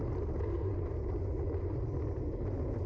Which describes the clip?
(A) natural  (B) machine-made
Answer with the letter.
A